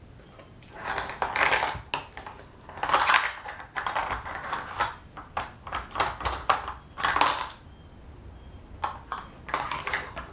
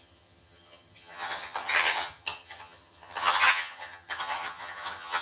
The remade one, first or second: second